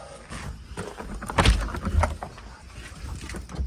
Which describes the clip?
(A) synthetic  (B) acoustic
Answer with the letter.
B